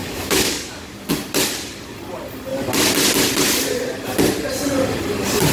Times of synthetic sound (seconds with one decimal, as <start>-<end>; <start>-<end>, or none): 0.0-1.1